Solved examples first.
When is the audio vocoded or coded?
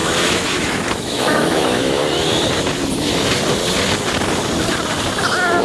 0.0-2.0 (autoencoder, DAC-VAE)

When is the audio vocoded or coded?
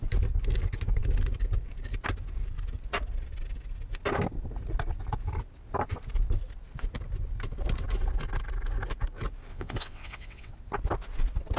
9.5-10.5 (vocoder, WaveNeXt)